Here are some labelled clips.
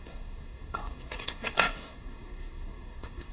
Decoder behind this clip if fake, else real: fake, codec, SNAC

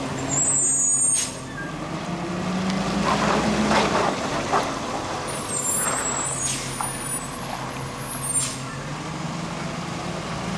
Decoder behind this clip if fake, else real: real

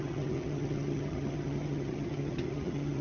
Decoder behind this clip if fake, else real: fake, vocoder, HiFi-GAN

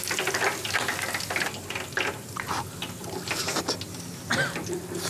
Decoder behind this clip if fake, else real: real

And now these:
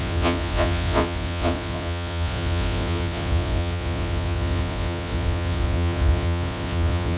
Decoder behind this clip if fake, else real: fake, vocoder, Vocos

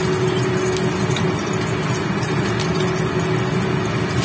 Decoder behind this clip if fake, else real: real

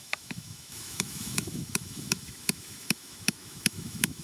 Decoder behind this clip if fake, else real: fake, autoencoder, DAC-VAE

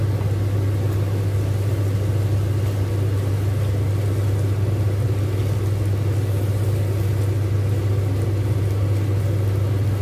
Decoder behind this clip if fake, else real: real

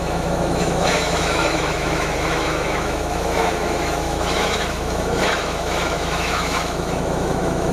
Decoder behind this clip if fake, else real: fake, autoencoder, DAC-VAE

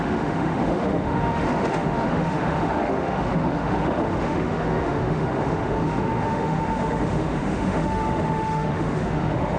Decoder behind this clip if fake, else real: fake, autoencoder, DAC-VAE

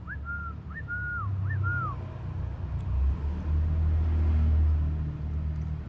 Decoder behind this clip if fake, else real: real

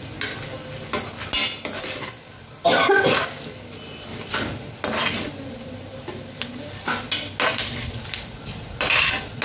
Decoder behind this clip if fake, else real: real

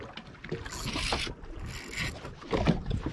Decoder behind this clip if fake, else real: real